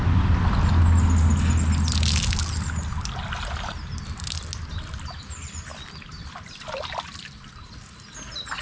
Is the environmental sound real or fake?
real